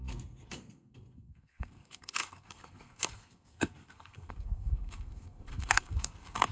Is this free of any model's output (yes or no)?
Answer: no